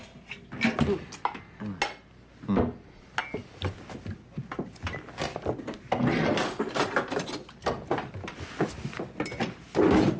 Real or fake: real